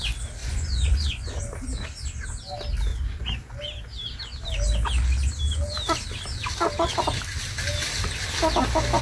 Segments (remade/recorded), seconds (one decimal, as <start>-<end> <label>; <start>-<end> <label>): 0.0-0.4 recorded; 0.4-1.4 remade; 1.4-2.9 recorded; 2.9-3.6 remade; 3.6-9.0 recorded